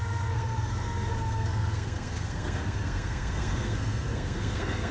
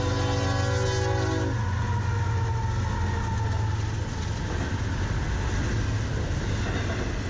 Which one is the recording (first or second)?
second